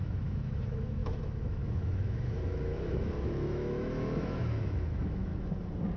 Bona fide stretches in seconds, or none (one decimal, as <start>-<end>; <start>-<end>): 5.3-6.0